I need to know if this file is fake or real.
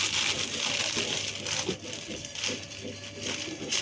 real